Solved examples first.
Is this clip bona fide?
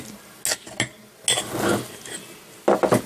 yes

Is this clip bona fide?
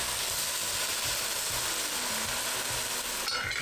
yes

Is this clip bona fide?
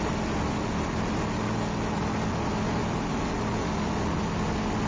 yes